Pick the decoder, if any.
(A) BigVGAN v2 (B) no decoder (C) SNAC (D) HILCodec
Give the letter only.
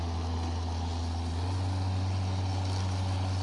B